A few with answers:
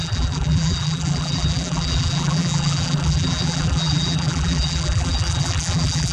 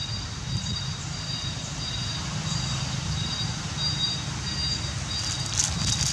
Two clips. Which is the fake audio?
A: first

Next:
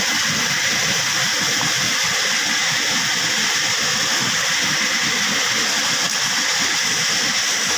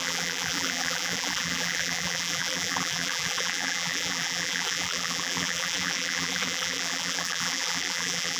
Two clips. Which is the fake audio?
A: second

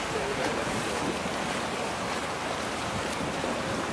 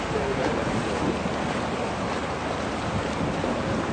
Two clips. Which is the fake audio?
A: first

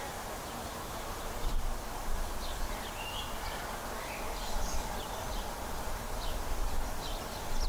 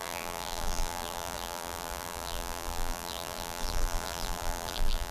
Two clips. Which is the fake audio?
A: second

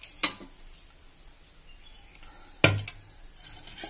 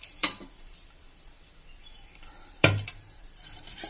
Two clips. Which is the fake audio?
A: second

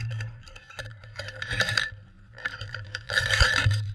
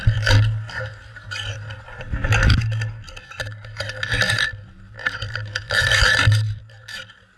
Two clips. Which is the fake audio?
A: first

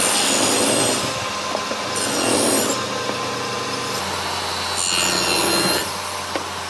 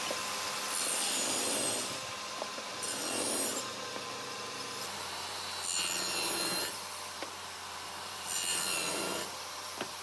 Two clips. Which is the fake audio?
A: second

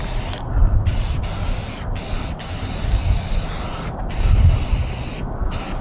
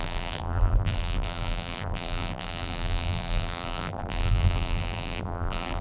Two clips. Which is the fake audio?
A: second